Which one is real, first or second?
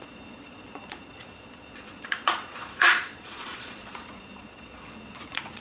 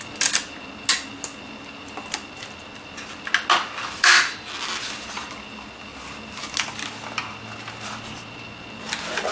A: second